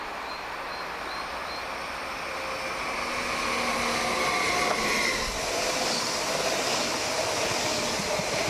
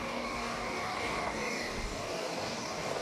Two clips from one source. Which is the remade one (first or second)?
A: second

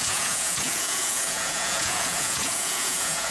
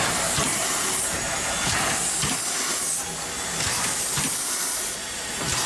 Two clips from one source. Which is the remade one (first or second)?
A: first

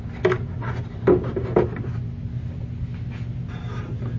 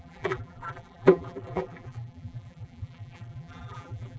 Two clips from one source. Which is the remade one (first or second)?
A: second